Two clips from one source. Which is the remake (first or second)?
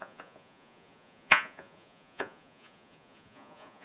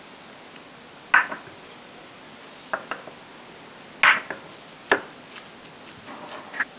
first